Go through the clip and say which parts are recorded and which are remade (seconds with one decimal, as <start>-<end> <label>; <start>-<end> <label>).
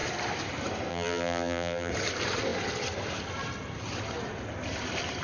0.0-0.9 recorded; 0.9-1.9 remade; 1.9-5.2 recorded